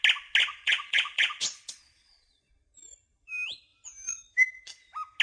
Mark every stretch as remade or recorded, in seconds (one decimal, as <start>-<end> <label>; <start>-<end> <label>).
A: 0.0-0.4 recorded; 0.4-2.5 remade; 2.5-5.2 recorded